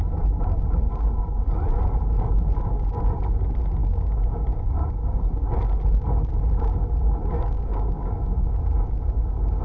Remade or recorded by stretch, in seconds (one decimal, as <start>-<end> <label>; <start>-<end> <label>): 0.0-3.8 recorded; 3.8-5.2 remade; 5.2-7.7 recorded; 7.7-8.5 remade; 8.5-9.6 recorded